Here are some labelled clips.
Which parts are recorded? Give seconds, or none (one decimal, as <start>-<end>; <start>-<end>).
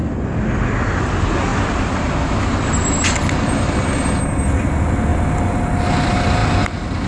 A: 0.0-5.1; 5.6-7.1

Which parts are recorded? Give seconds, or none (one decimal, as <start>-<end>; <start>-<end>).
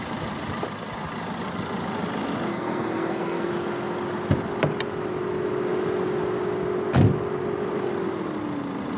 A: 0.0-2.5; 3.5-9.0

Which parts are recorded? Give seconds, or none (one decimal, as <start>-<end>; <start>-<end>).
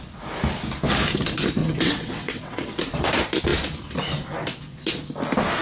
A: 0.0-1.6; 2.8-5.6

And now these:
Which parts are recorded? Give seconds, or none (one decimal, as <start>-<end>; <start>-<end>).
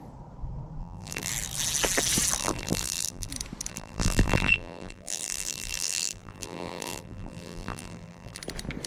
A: 0.0-0.8; 1.3-2.4; 3.3-3.7; 8.4-8.9